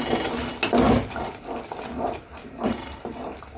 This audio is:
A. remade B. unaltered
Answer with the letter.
B